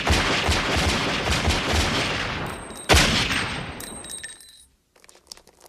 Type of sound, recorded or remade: recorded